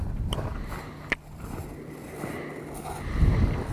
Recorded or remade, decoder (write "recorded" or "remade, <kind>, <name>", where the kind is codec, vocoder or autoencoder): recorded